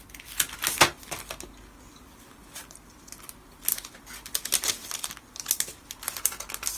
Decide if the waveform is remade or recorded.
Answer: recorded